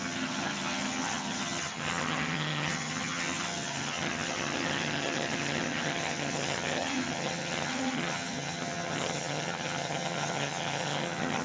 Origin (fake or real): fake